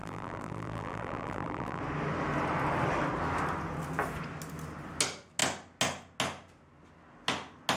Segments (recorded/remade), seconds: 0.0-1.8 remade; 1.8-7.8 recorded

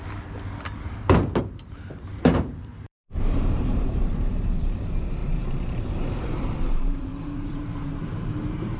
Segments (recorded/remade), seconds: 0.0-2.1 recorded; 2.1-4.0 remade; 4.0-5.2 recorded; 5.2-8.8 remade

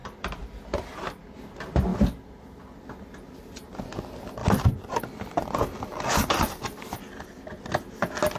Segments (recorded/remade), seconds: 0.0-0.6 remade; 0.6-4.4 recorded; 4.4-7.4 remade; 7.4-8.4 recorded